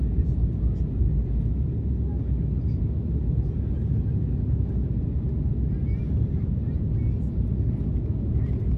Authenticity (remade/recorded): recorded